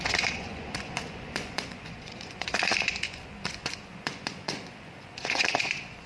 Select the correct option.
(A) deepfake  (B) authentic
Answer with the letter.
A